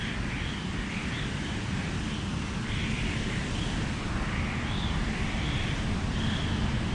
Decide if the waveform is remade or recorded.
recorded